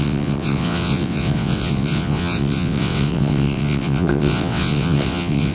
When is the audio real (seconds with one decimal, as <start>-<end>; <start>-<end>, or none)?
none